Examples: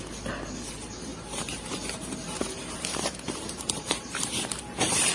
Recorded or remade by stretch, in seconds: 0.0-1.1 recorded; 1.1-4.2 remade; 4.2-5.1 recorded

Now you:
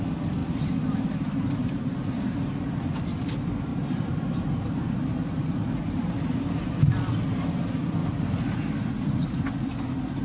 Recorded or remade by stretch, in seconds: 0.0-0.4 recorded; 0.4-2.5 remade; 2.5-3.7 recorded; 3.7-6.9 remade; 6.9-8.0 recorded; 8.0-8.9 remade; 8.9-10.2 recorded